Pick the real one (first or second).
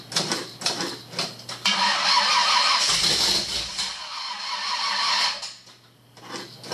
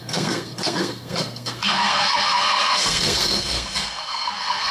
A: first